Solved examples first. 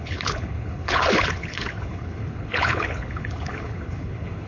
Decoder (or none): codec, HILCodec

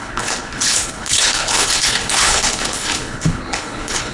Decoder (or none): codec, HILCodec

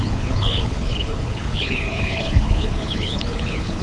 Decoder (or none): codec, HILCodec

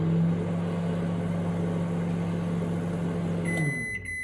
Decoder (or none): none